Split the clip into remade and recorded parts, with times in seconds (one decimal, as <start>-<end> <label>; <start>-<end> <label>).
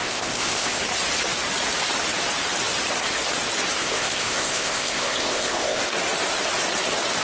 0.0-0.8 remade; 0.8-3.8 recorded; 3.8-5.8 remade; 5.8-7.2 recorded